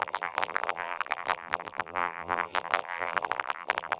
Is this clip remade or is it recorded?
remade